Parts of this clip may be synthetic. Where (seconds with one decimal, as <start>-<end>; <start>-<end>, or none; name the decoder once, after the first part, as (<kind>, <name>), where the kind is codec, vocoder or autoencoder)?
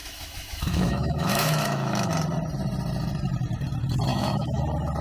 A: 0.0-2.1 (autoencoder, DAC-VAE); 4.1-4.6